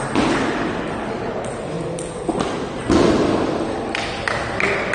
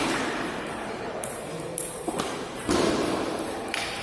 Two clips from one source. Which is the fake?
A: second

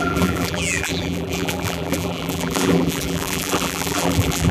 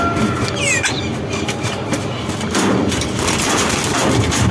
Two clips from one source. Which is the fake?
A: first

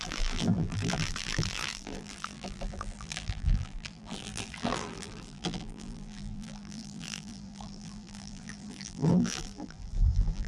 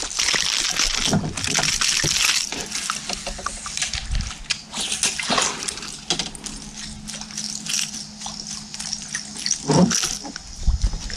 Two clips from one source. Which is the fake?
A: first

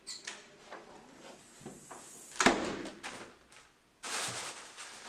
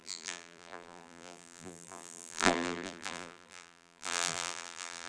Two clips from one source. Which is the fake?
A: second